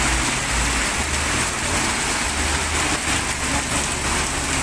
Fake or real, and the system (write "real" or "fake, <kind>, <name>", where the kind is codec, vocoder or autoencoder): real